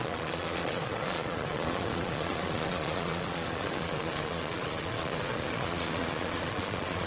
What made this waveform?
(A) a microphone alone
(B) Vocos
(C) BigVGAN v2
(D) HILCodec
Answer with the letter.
B